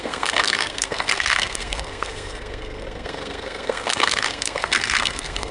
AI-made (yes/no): yes